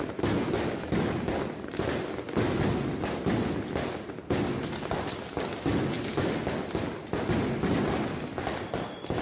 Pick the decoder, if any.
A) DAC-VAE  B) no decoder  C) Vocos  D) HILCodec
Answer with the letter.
B